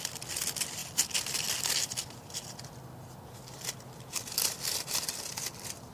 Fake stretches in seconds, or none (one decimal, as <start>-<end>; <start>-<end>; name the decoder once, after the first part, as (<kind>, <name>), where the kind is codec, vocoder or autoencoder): none